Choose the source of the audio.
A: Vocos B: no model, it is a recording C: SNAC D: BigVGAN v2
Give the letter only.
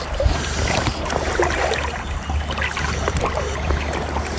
B